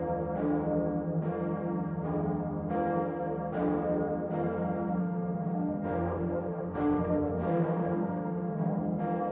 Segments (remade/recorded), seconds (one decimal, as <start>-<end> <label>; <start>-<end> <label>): 0.0-5.0 recorded; 5.0-8.8 remade; 8.8-9.3 recorded

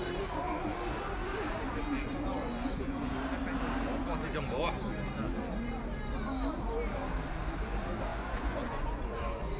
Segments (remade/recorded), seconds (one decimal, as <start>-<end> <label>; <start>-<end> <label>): 0.0-2.4 recorded; 2.4-3.1 remade; 3.1-8.1 recorded; 8.1-9.6 remade

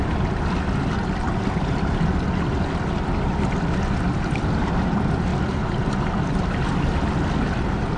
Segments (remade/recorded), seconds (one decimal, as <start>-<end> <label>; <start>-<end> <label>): 0.0-8.0 recorded